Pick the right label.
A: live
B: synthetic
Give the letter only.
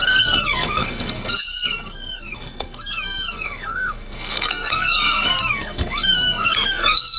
B